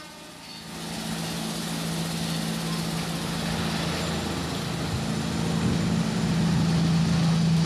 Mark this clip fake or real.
real